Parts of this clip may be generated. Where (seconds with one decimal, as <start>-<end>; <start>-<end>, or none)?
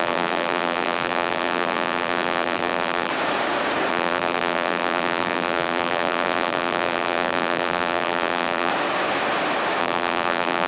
0.0-3.1; 3.9-8.7; 9.8-10.7